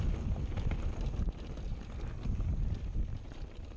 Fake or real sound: real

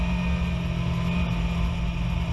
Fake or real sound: real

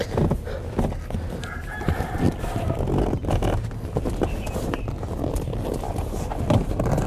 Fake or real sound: real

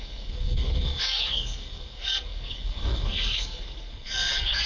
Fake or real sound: fake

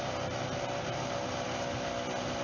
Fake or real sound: real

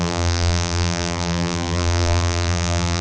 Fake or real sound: fake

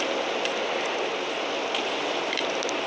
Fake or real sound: real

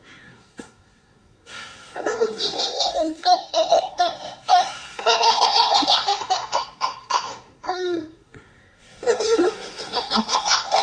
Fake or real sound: fake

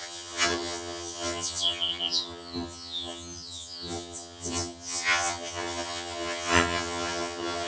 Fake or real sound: fake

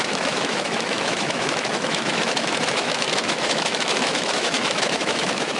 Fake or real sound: fake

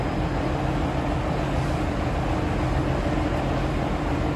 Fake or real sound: real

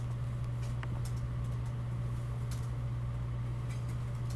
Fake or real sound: real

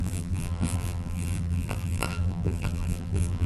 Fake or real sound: fake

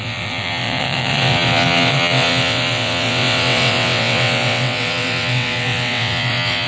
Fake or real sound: fake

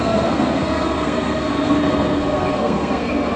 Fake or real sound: fake